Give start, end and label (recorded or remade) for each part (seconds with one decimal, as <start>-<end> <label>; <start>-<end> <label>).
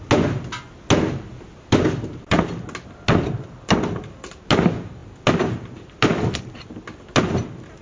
0.0-7.8 recorded